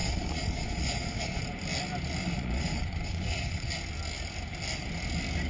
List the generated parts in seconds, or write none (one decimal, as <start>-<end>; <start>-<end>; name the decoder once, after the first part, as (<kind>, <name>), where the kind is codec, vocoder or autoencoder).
0.0-1.4 (vocoder, Vocos); 2.2-3.7